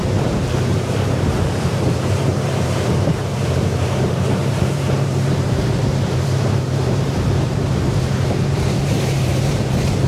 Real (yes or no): no